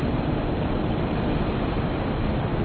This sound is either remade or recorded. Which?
recorded